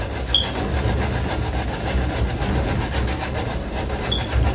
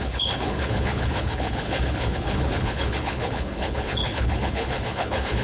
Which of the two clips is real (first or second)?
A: first